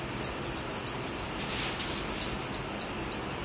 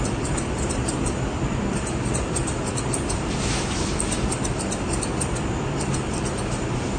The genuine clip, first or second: first